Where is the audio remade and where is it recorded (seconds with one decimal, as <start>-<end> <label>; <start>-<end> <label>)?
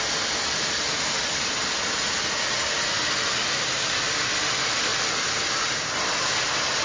0.0-6.8 recorded